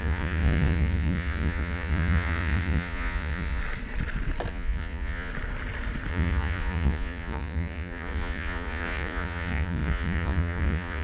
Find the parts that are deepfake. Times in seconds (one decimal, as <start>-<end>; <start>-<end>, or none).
0.0-3.6; 4.5-5.3; 6.1-11.0